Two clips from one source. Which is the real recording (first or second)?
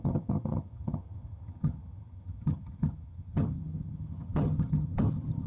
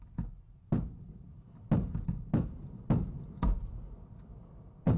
second